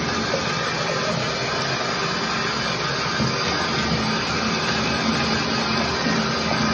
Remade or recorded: recorded